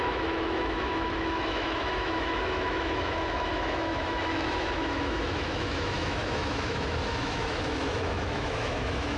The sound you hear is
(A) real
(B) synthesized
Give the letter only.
B